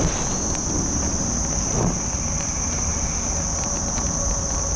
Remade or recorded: recorded